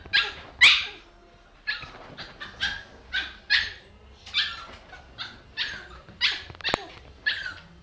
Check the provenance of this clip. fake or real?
real